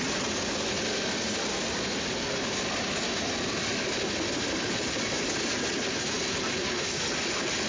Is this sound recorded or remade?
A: recorded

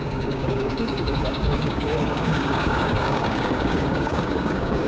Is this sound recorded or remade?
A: remade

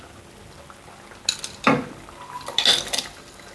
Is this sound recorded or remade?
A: recorded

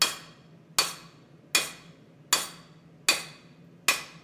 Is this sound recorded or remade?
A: recorded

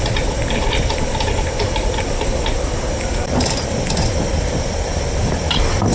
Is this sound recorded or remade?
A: remade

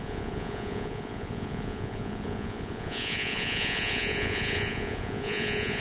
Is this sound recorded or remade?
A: remade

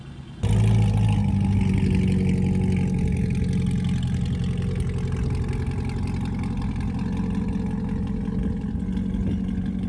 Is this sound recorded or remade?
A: recorded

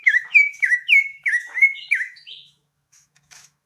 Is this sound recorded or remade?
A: remade